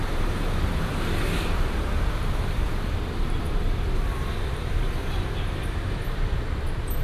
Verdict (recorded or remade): remade